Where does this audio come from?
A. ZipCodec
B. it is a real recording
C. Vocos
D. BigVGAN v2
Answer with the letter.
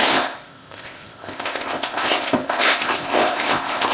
A